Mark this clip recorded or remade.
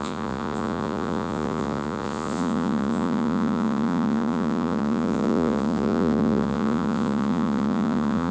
remade